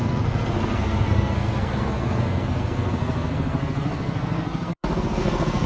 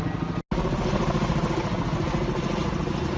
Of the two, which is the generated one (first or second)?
first